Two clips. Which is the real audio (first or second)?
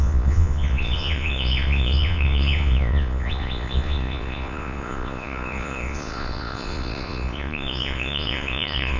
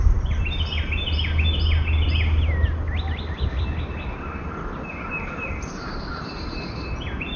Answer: second